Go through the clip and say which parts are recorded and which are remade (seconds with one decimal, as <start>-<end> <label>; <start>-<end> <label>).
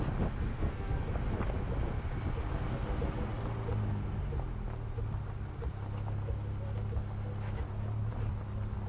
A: 0.0-0.5 recorded; 0.5-1.0 remade; 1.0-8.9 recorded